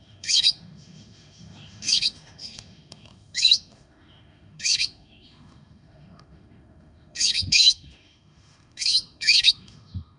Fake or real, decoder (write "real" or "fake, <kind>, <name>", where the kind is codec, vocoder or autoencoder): fake, autoencoder, DAC-VAE